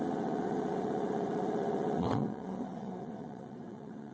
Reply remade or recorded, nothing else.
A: remade